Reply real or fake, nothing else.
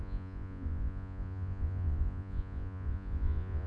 fake